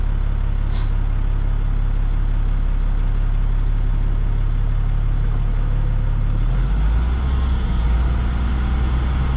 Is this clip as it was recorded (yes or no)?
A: yes